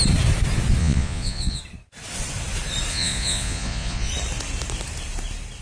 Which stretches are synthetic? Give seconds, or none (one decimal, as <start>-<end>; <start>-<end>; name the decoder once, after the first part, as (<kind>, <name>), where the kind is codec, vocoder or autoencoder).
0.8-1.6 (vocoder, Vocos); 2.9-4.1